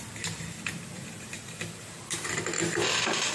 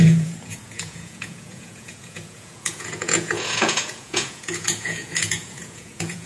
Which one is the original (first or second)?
first